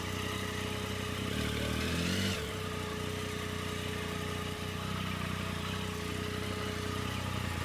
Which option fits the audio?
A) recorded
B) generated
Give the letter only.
A